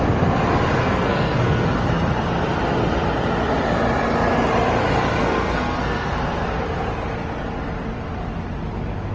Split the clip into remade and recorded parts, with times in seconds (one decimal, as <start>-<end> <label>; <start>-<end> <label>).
0.0-0.8 recorded; 0.8-1.7 remade; 1.7-5.2 recorded; 5.2-6.1 remade; 6.1-9.1 recorded